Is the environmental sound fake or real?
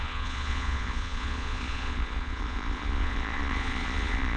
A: fake